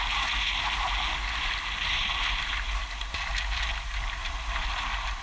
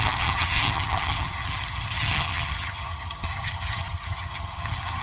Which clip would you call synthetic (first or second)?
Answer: second